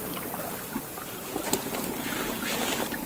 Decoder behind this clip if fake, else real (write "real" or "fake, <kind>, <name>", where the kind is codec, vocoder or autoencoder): real